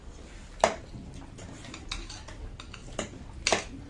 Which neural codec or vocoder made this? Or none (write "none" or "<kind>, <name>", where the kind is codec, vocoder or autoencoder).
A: none